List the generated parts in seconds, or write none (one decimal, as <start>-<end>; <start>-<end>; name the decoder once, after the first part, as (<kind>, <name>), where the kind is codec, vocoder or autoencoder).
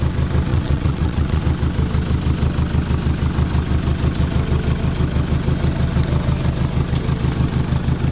0.5-1.4 (vocoder, WaveNeXt)